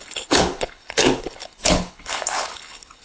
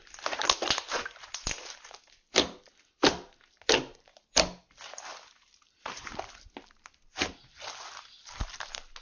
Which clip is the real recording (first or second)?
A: second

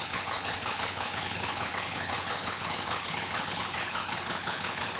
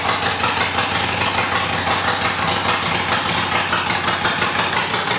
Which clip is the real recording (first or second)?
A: second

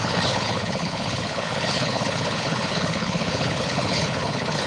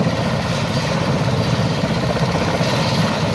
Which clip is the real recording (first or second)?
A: second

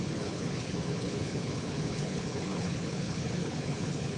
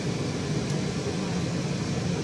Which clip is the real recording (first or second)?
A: second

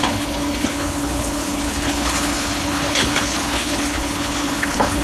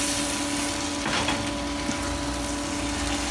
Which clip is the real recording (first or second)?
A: second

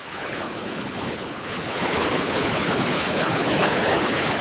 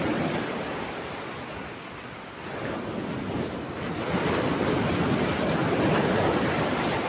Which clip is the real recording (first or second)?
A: second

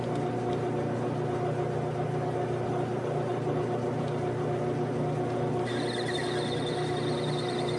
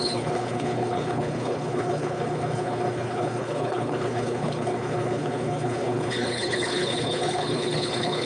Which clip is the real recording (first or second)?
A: first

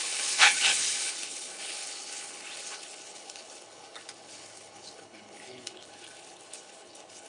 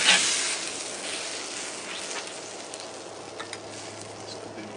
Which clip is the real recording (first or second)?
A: second